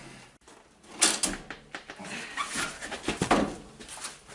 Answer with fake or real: real